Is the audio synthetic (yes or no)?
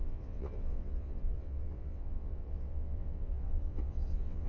yes